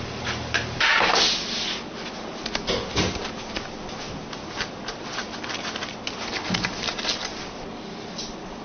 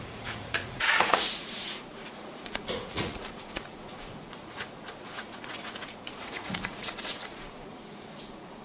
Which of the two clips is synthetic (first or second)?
second